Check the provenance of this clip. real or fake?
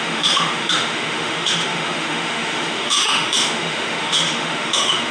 fake